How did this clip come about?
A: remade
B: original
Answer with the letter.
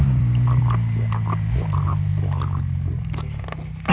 B